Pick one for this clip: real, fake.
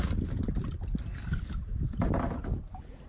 real